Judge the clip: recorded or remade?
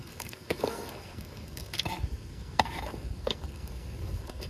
remade